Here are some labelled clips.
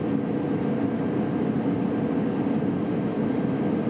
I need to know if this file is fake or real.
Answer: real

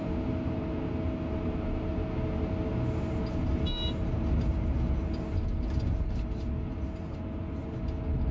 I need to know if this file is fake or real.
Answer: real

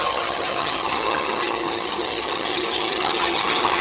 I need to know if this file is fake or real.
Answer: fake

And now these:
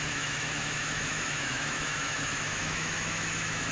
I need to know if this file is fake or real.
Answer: fake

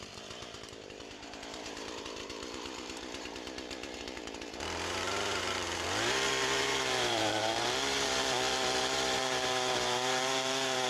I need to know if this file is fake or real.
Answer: fake